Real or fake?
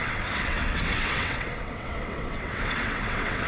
fake